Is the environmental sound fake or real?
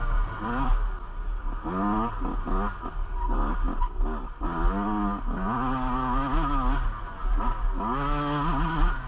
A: real